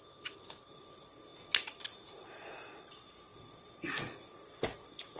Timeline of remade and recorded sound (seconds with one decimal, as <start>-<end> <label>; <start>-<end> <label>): 0.0-1.3 remade; 1.3-2.1 recorded; 2.1-5.2 remade